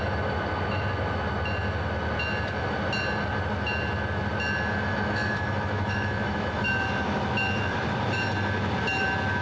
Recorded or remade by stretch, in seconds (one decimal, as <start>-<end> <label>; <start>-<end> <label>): 0.0-4.7 recorded; 4.7-6.7 remade; 6.7-9.4 recorded